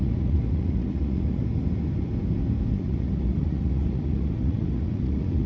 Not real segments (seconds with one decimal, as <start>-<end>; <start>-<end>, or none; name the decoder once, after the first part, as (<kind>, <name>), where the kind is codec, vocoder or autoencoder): 0.0-1.4 (vocoder, Vocos); 2.7-5.5